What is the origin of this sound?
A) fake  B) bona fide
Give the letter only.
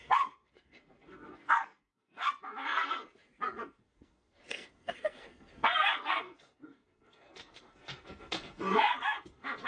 A